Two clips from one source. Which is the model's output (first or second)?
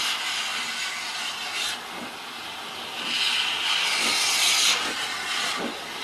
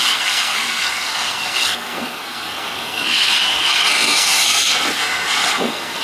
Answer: second